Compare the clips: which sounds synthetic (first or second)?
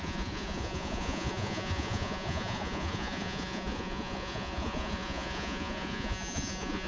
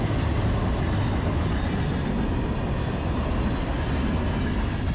first